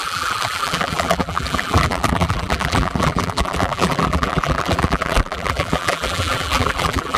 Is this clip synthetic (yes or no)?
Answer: yes